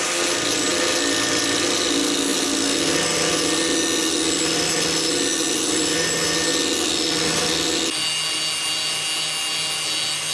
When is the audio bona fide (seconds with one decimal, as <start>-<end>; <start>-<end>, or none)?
0.0-10.3